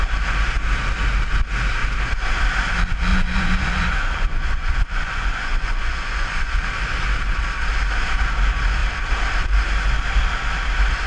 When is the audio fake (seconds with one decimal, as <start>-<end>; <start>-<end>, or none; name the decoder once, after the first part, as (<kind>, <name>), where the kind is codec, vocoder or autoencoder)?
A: 3.1-6.6 (vocoder, Vocos)